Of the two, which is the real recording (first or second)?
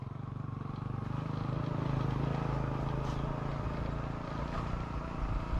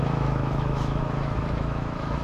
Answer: first